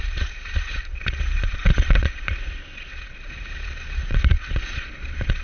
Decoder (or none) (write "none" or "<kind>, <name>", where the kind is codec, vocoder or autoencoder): vocoder, Vocos